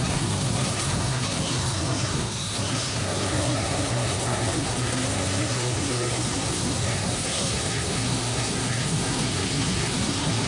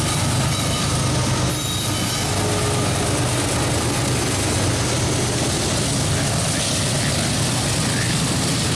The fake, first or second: first